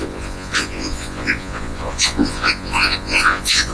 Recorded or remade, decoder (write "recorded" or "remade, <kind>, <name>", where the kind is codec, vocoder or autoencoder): remade, vocoder, Vocos